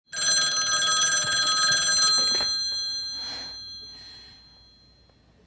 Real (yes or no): yes